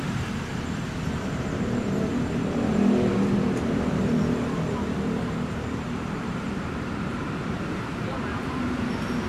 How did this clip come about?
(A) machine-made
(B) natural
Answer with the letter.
A